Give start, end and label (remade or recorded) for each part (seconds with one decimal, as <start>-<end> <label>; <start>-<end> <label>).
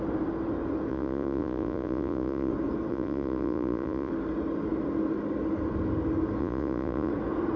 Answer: 0.0-0.9 recorded; 0.9-2.5 remade; 2.5-2.9 recorded; 2.9-4.1 remade; 4.1-6.4 recorded; 6.4-7.1 remade; 7.1-7.6 recorded